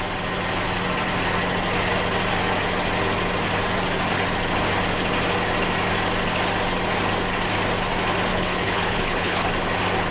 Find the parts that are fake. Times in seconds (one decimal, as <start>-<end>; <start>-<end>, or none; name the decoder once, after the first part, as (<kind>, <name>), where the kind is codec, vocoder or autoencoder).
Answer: 8.3-9.5 (codec, HILCodec)